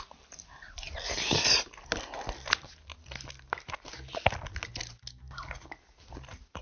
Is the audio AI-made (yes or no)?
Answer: no